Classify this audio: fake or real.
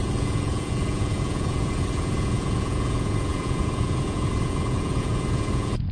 fake